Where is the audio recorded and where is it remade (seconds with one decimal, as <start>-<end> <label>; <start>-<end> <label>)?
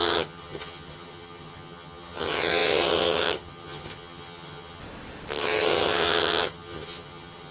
0.0-4.8 remade; 4.8-5.4 recorded; 5.4-7.5 remade